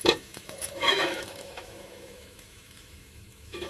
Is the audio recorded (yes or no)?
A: no